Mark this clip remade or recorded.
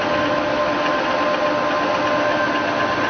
recorded